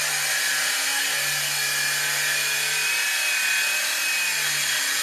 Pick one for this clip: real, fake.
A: real